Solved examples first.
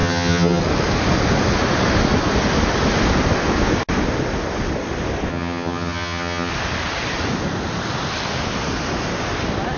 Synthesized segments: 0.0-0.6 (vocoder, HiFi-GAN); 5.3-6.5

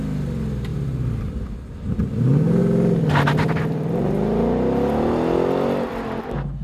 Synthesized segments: none

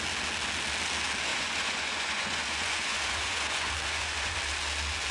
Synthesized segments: 1.3-4.3 (vocoder, Vocos)

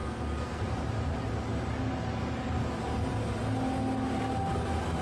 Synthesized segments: 0.0-0.6 (codec, SNAC)